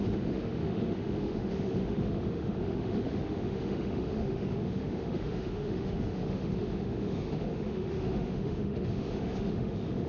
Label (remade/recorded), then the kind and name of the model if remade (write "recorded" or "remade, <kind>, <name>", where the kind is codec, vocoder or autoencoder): remade, autoencoder, DAC-VAE